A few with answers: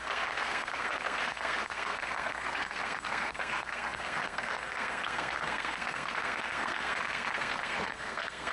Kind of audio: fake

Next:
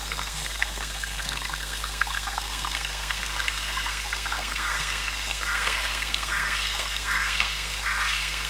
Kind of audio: fake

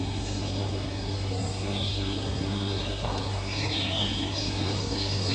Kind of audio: fake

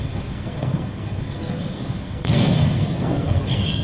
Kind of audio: fake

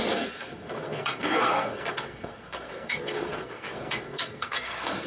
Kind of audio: fake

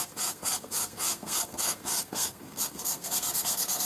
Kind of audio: fake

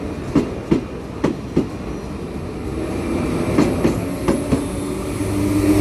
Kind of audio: real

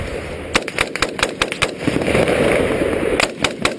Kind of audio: real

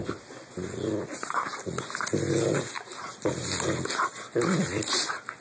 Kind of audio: real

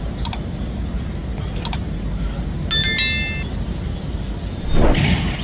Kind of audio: real